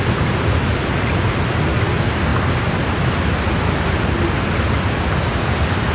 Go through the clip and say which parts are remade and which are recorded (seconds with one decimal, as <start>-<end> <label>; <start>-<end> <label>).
0.0-5.9 recorded